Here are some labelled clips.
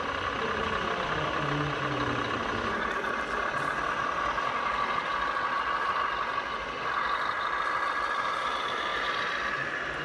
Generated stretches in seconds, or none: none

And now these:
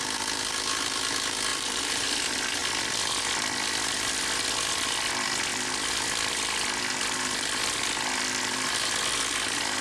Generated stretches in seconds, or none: 1.5-2.1 (vocoder, BigVGAN v2)

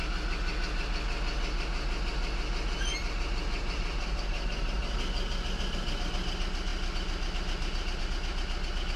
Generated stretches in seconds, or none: 2.9-4.8 (vocoder, BigVGAN v2)

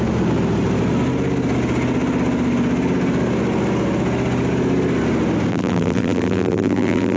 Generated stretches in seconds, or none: 5.5-7.2 (vocoder, BigVGAN v2)

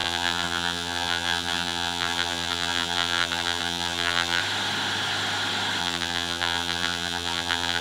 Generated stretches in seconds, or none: 0.0-4.4 (vocoder, BigVGAN v2); 5.8-7.8

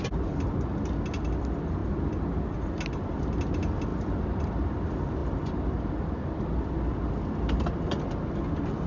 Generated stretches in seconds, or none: 1.8-2.3 (vocoder, BigVGAN v2); 3.9-4.5; 5.2-8.0

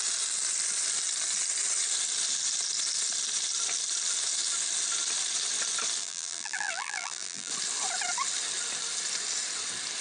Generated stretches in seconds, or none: 6.0-7.5 (vocoder, BigVGAN v2)

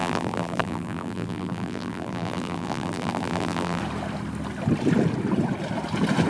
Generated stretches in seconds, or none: 0.0-3.8 (vocoder, BigVGAN v2)